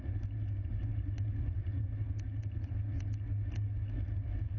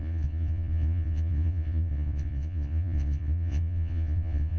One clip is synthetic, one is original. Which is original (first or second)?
first